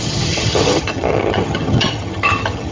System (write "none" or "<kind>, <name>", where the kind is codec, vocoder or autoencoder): vocoder, HiFi-GAN